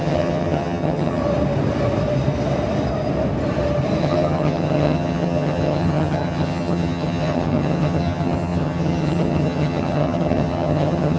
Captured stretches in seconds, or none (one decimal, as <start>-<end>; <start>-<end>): 1.2-4.0